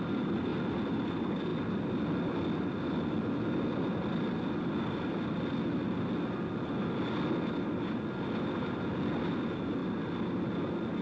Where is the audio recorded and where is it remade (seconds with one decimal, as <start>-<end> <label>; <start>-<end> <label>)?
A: 0.0-11.0 recorded